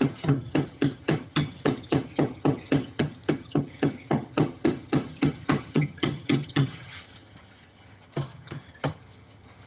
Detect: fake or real fake